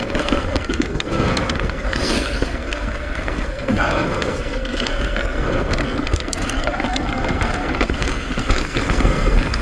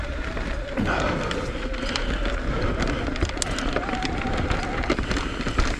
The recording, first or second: second